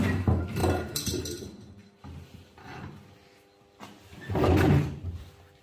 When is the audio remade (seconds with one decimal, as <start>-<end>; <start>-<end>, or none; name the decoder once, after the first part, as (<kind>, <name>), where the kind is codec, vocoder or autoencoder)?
1.8-5.6 (vocoder, BigVGAN v2)